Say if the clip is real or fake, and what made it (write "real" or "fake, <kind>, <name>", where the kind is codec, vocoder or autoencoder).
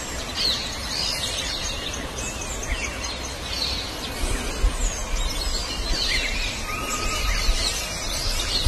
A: real